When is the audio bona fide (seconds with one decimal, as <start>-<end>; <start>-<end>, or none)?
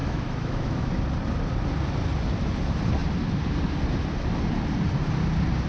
0.9-5.7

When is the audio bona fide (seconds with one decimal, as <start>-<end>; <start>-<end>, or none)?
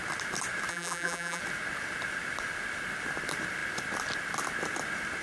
0.0-0.7; 1.4-5.2